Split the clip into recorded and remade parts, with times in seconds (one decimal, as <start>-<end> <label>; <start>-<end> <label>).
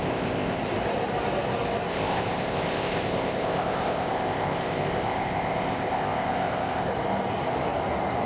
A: 0.0-0.6 remade; 0.6-1.9 recorded; 1.9-6.9 remade; 6.9-8.3 recorded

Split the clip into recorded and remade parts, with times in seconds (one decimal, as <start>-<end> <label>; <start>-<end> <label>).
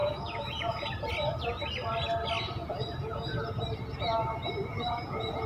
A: 0.0-1.1 remade; 1.1-2.6 recorded; 2.6-3.6 remade; 3.6-4.7 recorded; 4.7-5.5 remade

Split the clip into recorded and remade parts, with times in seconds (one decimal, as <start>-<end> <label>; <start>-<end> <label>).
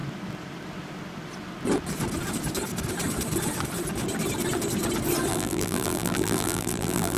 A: 0.0-5.3 recorded; 5.3-7.2 remade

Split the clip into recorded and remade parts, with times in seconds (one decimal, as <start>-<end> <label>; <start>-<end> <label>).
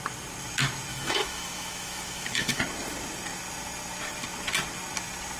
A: 0.0-0.9 recorded; 0.9-2.6 remade; 2.6-5.4 recorded